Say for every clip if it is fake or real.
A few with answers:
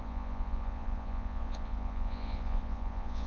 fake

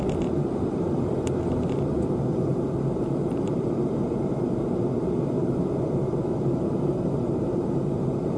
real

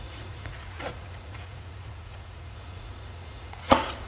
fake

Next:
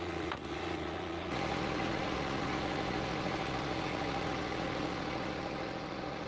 fake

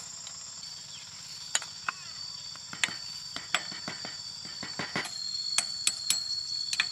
real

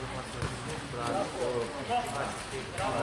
real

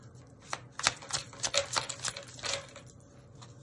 real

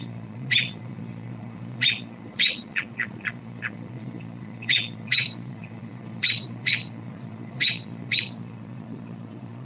fake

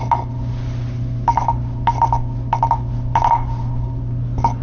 real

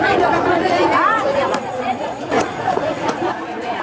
fake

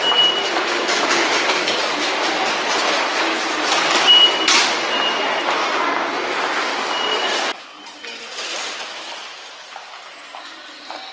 real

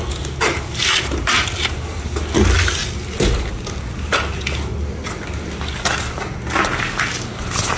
real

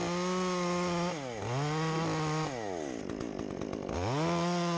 real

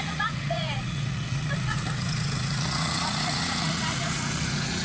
fake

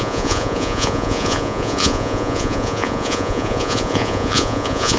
fake